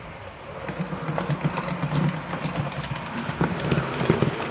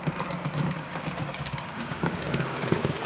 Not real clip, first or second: second